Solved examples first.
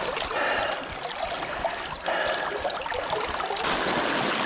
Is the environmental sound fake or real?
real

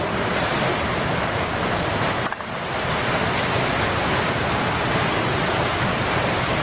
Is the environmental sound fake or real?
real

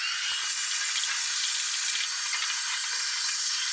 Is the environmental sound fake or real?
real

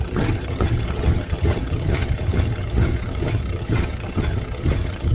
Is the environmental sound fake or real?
fake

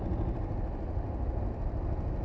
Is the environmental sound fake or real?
real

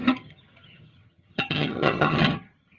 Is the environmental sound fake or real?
fake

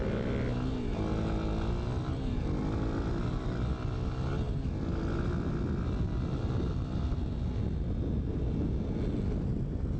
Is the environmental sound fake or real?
real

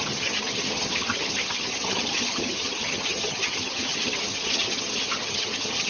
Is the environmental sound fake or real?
fake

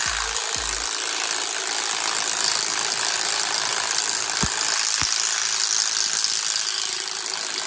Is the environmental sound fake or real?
real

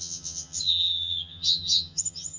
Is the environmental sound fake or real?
fake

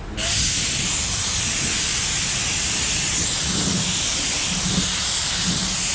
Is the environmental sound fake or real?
real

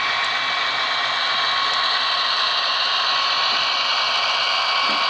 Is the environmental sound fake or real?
real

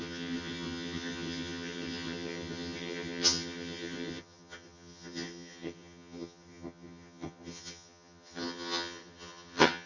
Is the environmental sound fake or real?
fake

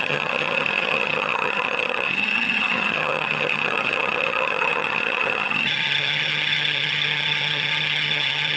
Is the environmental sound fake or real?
fake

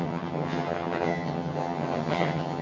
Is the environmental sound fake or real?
fake